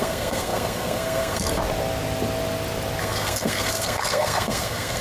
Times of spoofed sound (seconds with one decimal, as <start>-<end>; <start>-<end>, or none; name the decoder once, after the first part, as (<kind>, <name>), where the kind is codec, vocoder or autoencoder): 0.0-1.6 (codec, SNAC); 3.0-5.0